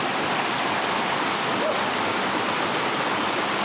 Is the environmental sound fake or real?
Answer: real